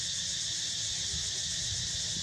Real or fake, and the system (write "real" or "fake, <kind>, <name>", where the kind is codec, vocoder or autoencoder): real